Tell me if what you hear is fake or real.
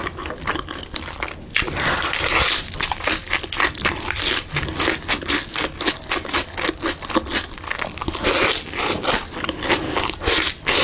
real